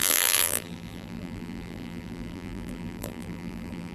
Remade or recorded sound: remade